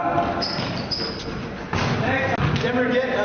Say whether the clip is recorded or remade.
recorded